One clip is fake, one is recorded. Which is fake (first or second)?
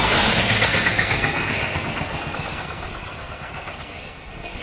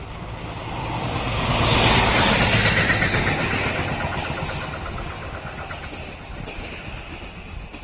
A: first